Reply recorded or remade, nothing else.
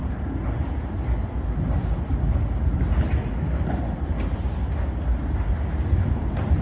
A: recorded